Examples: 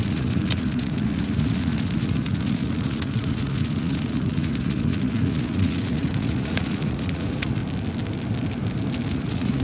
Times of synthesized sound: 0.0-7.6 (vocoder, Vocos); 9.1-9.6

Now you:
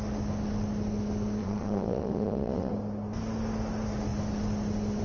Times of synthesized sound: 1.4-2.7 (vocoder, Vocos)

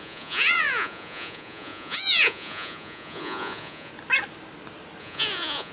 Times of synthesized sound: 0.0-3.9 (vocoder, Vocos); 5.0-5.7

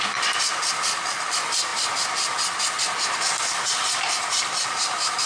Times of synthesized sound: none

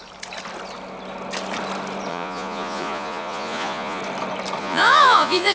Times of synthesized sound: 2.1-4.0 (vocoder, Vocos); 4.6-5.5

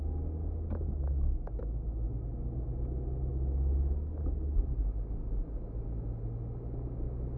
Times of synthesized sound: none

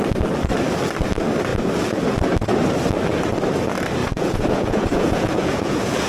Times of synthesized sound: 4.0-6.1 (vocoder, Vocos)